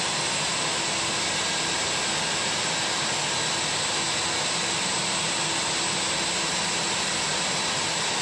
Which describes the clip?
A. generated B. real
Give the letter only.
B